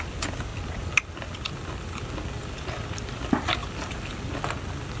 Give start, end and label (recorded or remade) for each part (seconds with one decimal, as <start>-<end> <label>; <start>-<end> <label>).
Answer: 0.0-5.0 recorded